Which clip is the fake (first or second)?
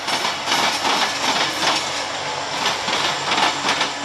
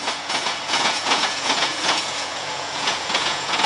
second